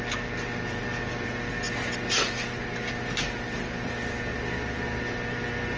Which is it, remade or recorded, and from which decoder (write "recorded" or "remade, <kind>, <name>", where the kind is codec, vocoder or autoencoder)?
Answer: recorded